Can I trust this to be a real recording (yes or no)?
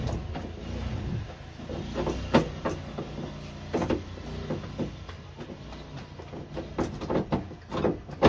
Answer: yes